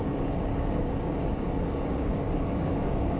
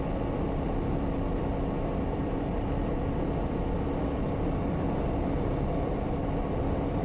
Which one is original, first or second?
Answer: second